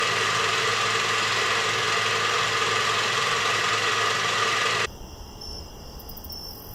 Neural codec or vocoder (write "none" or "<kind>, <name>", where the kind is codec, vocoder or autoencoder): vocoder, BigVGAN v2